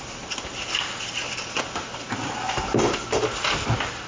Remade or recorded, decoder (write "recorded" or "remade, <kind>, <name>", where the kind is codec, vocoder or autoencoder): recorded